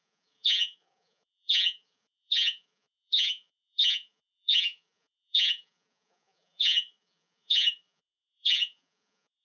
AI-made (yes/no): yes